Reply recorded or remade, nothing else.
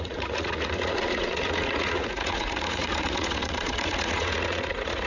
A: remade